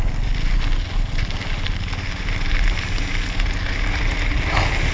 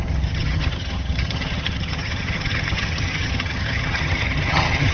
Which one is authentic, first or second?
first